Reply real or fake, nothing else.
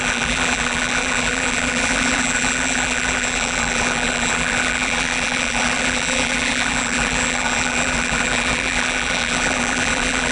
fake